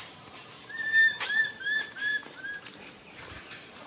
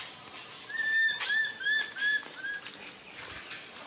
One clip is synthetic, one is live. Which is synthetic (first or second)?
first